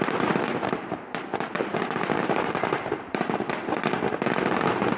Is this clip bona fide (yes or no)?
no